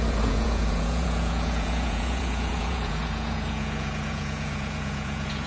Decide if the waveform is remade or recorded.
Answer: remade